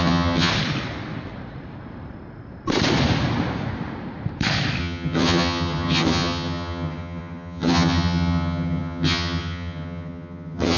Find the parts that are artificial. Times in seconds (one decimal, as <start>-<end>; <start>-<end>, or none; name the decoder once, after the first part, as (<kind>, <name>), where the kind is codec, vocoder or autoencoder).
0.0-0.5 (vocoder, HiFi-GAN); 4.8-10.8